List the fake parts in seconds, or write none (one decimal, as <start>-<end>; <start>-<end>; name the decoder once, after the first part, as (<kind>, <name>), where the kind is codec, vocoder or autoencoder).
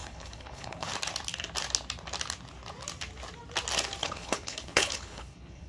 0.0-0.9 (codec, HILCodec); 4.0-5.7